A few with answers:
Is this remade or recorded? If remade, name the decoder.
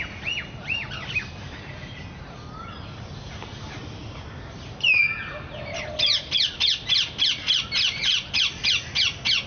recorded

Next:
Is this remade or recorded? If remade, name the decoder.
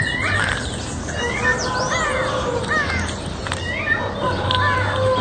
recorded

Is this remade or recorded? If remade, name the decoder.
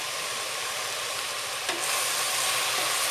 recorded